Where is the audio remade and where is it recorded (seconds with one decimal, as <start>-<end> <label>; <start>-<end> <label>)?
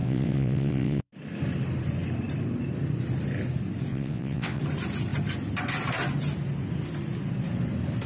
0.0-1.1 remade; 1.1-3.9 recorded; 3.9-4.6 remade; 4.6-8.1 recorded